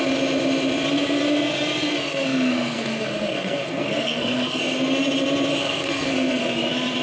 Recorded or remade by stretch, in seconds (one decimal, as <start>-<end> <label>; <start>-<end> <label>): 0.0-1.9 recorded; 1.9-4.6 remade; 4.6-5.6 recorded; 5.6-6.4 remade; 6.4-7.0 recorded

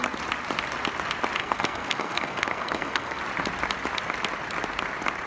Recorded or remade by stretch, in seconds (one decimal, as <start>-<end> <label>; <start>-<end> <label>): 0.0-1.4 recorded; 1.4-3.2 remade; 3.2-5.3 recorded

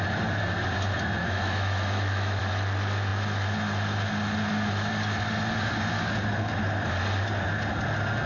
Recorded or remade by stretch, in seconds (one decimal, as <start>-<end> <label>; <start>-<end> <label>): 0.0-1.2 recorded; 1.2-2.4 remade; 2.4-8.3 recorded